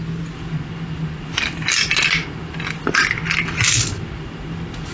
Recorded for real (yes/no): yes